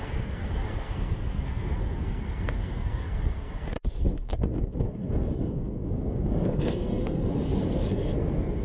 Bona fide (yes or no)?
no